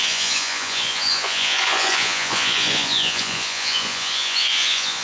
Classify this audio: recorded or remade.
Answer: remade